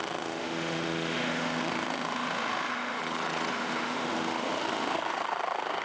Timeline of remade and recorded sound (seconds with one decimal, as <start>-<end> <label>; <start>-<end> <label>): 0.0-3.0 remade; 3.0-3.5 recorded; 3.5-5.8 remade